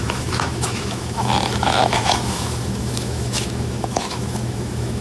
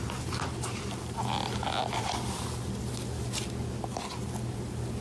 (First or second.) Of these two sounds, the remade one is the first